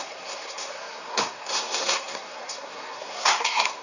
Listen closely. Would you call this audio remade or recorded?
remade